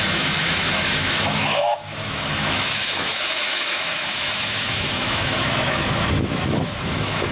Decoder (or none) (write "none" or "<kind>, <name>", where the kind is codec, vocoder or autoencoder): autoencoder, DAC-VAE